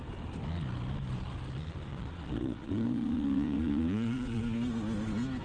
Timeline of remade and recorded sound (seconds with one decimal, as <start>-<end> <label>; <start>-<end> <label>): 0.0-1.9 recorded; 1.9-4.4 remade; 4.4-5.4 recorded